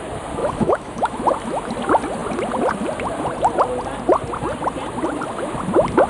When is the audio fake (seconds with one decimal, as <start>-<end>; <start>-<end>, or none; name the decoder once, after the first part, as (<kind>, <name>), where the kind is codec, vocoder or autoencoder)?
0.4-1.2 (autoencoder, DAC-VAE)